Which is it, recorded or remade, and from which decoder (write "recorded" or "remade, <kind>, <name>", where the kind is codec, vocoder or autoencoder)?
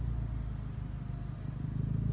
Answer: recorded